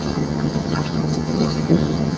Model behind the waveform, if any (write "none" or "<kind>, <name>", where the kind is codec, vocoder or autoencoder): vocoder, HiFi-GAN